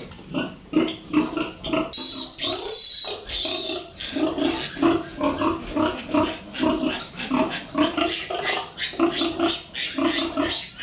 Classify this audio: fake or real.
real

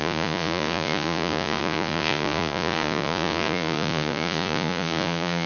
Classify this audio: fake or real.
fake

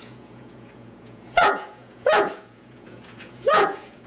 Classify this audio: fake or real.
fake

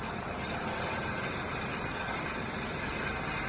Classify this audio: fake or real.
real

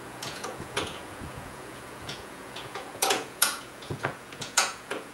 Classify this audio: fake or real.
fake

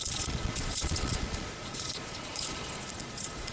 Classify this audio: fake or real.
fake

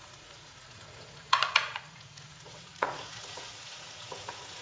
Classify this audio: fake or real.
fake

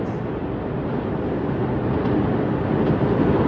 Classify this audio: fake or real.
real